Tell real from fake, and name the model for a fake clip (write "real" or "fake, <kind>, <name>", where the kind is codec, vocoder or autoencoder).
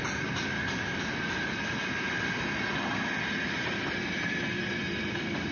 real